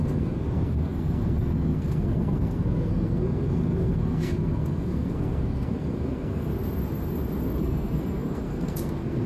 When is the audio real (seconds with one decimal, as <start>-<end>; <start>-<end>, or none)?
6.5-7.6